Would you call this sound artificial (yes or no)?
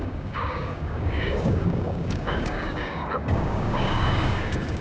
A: yes